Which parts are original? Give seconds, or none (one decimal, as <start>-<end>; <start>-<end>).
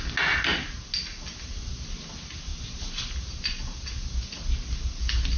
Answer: 0.0-5.4